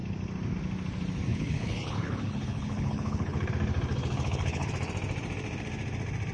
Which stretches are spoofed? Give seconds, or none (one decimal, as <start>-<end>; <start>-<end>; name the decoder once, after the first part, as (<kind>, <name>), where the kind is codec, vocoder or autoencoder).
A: 1.3-3.5 (codec, HILCodec); 3.9-4.7